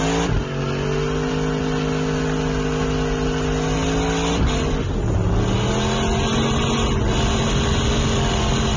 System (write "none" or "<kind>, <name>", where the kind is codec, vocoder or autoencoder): none